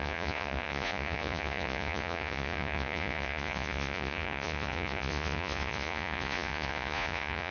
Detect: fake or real fake